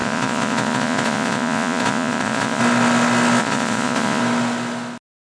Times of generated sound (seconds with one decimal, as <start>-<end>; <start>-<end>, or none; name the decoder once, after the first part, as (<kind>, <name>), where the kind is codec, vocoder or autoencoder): 0.0-2.6 (vocoder, Vocos); 3.4-4.2